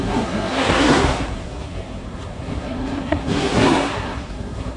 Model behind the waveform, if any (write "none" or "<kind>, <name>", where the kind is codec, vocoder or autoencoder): codec, SNAC